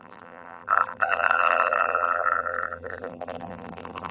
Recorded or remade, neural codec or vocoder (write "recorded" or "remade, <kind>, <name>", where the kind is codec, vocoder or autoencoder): remade, vocoder, BigVGAN v2